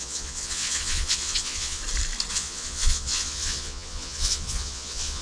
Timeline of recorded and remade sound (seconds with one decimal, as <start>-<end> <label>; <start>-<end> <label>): 0.0-1.8 remade; 1.8-2.3 recorded; 2.3-5.2 remade